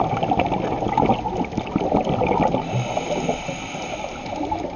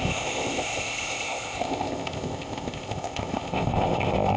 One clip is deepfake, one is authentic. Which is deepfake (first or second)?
second